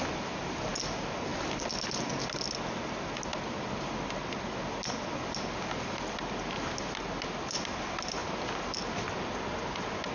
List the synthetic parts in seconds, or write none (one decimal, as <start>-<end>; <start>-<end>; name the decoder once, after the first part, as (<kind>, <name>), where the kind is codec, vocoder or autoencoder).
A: 3.3-4.6 (vocoder, BigVGAN v2)